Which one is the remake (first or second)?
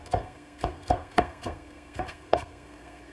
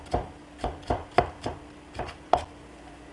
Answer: first